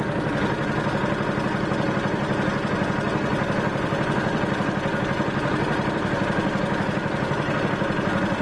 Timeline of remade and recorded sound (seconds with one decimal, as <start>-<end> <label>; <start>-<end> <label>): 0.0-3.3 recorded; 3.3-7.6 remade; 7.6-8.4 recorded